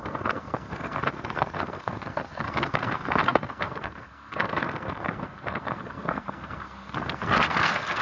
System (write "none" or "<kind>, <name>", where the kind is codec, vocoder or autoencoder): codec, SNAC